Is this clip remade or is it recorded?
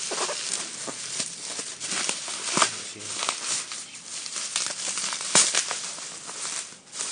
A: recorded